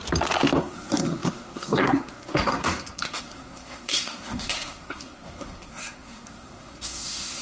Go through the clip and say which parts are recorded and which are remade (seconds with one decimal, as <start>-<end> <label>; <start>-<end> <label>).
0.0-0.6 recorded; 0.6-7.4 remade